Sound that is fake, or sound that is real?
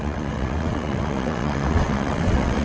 fake